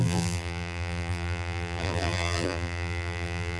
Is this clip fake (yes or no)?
yes